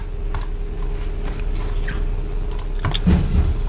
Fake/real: real